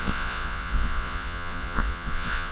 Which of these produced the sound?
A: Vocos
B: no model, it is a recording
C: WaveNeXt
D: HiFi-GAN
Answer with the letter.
A